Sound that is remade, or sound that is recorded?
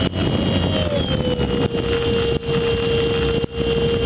recorded